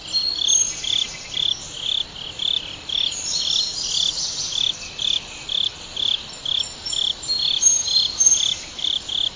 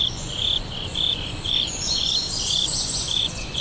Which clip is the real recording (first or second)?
first